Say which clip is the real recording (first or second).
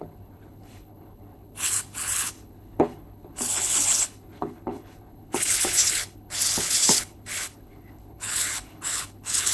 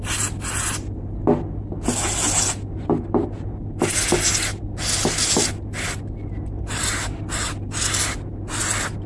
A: second